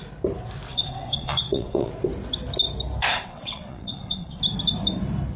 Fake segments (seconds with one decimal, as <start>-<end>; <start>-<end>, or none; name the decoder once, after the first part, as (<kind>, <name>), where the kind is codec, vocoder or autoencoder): 0.7-1.9 (vocoder, WaveNeXt); 3.1-4.4